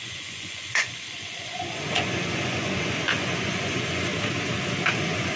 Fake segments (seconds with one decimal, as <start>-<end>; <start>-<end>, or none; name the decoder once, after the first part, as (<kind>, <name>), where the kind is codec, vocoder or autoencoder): 0.0-4.1 (vocoder, Vocos); 4.9-5.4